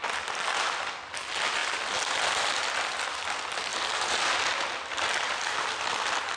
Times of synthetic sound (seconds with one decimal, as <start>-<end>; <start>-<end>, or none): none